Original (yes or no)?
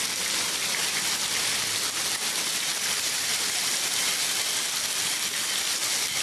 yes